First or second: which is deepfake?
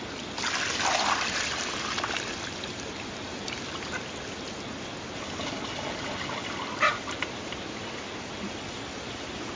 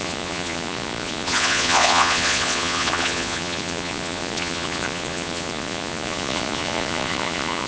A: second